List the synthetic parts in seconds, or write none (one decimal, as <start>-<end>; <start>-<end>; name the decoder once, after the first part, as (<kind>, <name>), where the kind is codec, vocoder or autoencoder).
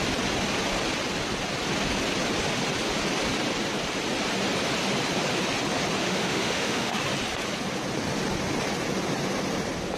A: 6.0-7.0 (autoencoder, DAC-VAE)